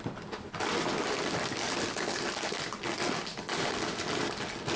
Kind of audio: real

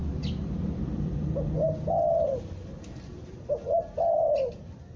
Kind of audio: real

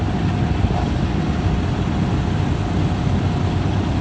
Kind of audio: real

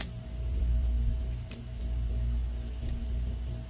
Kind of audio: real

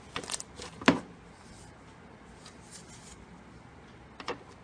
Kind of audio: real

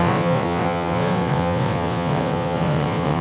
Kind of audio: fake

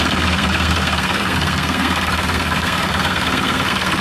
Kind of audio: fake